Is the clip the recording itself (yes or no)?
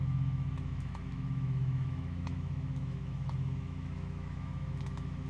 no